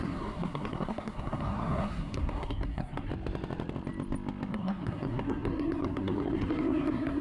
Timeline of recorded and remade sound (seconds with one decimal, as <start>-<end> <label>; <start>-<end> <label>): 0.0-3.1 remade; 3.1-4.5 recorded; 4.5-7.2 remade